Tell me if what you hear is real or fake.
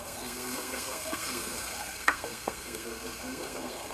fake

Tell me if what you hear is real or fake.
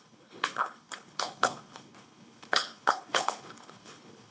fake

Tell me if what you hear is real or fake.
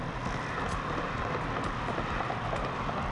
real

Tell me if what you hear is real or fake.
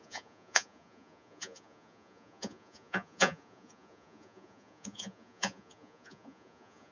fake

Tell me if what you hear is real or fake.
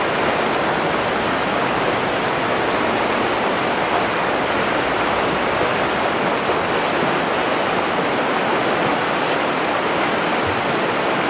real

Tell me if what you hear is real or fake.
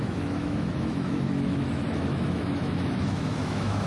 fake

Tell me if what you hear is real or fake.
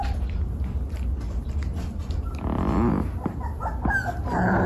real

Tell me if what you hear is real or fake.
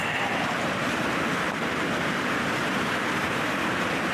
fake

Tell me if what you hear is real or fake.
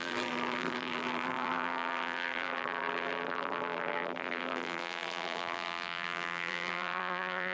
fake